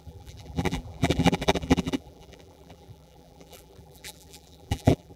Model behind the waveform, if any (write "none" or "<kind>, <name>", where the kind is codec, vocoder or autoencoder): vocoder, BigVGAN v2